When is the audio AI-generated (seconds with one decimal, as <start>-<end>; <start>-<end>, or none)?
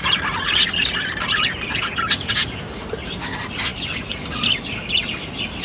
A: 0.0-2.3; 3.7-4.2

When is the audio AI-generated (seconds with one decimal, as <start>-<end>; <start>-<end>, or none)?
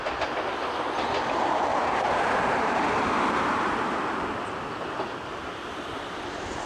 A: 1.7-4.4; 5.5-6.1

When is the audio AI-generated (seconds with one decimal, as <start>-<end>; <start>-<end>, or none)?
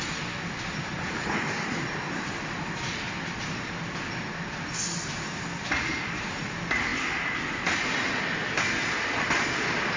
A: 0.9-2.4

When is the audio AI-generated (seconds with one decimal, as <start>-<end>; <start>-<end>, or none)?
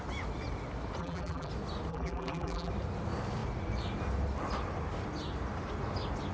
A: 1.0-1.5; 1.9-2.7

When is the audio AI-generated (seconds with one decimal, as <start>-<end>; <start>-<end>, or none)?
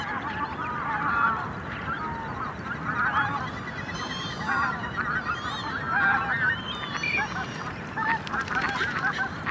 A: 0.0-9.5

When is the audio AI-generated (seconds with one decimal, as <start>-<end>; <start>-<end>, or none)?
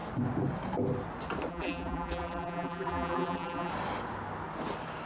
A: 1.5-3.7